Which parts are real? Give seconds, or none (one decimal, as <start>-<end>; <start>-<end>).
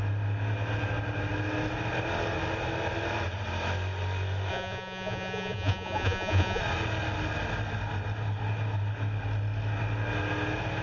0.0-4.5; 6.6-10.8